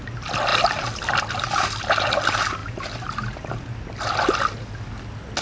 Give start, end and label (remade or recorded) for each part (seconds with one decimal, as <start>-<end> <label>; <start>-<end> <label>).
0.0-5.4 recorded